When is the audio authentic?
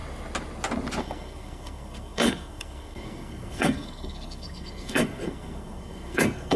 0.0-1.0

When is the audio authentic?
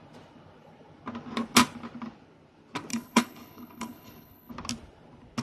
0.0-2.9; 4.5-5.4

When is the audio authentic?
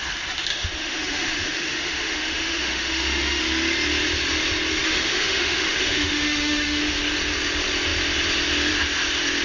0.0-0.5; 3.4-4.8; 6.8-9.4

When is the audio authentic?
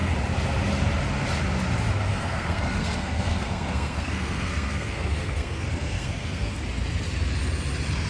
0.0-2.1; 6.5-8.1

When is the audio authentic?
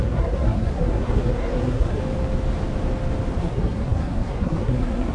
2.0-3.4